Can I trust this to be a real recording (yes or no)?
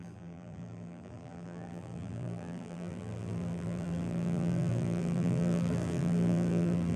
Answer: no